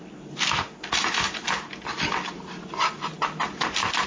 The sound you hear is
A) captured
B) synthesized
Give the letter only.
A